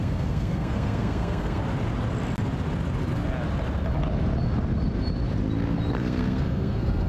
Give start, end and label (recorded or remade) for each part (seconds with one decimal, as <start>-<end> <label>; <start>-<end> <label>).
0.0-1.6 remade; 1.6-5.9 recorded; 5.9-7.1 remade